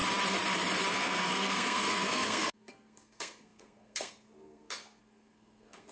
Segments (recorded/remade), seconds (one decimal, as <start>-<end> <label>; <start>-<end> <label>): 0.0-0.9 recorded; 0.9-5.9 remade